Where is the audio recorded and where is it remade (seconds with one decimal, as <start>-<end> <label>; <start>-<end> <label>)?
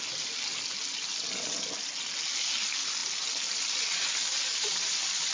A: 0.0-5.3 recorded